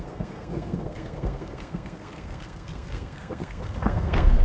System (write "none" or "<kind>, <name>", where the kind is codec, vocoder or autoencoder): codec, SNAC